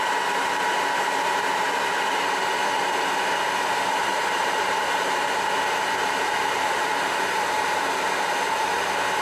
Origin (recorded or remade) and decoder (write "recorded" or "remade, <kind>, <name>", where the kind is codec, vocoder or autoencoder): remade, vocoder, BigVGAN v2